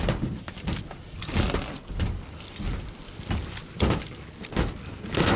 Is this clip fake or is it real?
real